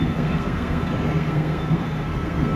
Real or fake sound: fake